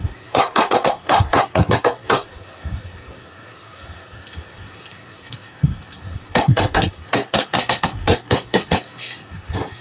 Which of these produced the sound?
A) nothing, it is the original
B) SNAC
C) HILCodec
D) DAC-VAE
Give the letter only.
B